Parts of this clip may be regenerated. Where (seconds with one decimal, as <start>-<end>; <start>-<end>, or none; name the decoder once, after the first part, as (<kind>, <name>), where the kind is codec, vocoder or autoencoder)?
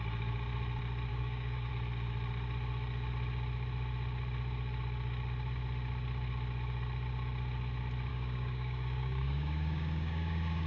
1.1-1.7 (codec, DAC); 8.1-10.7